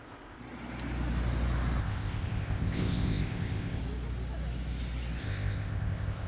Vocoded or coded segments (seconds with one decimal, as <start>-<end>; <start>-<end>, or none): 0.0-0.4; 1.8-3.8; 5.2-6.3